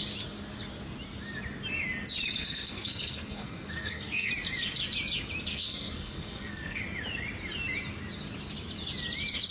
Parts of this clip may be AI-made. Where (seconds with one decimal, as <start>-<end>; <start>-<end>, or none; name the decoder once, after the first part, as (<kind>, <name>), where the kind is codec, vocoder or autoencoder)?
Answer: 2.4-4.3 (codec, SNAC); 5.5-6.8